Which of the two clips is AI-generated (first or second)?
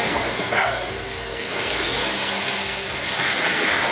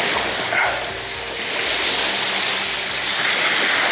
first